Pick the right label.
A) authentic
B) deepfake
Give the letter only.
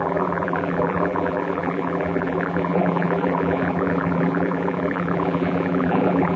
B